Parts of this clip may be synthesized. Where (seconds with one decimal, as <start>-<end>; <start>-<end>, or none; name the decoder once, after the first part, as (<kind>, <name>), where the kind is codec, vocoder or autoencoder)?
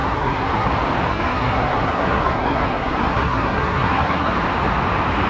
0.0-0.7 (codec, SNAC); 1.1-4.3